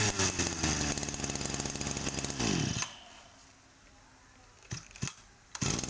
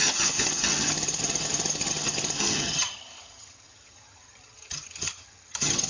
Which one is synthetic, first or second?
second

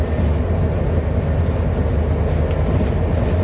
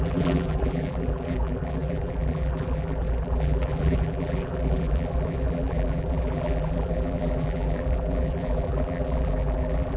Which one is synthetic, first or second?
second